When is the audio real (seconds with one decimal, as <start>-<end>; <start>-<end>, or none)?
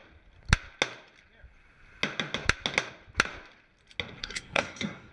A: 0.0-4.2